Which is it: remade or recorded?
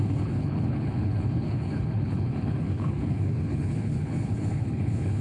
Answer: remade